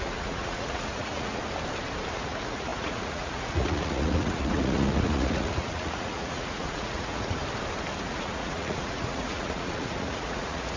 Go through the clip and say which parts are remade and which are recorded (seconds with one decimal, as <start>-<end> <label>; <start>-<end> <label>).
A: 0.0-1.4 remade; 1.4-2.1 recorded; 2.1-7.4 remade; 7.4-8.0 recorded; 8.0-10.8 remade